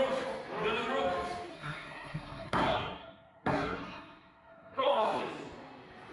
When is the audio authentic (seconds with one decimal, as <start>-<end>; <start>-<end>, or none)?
0.0-1.5; 5.2-6.1